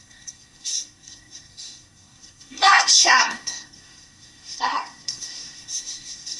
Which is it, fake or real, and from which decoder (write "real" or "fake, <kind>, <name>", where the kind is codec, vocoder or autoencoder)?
fake, codec, SNAC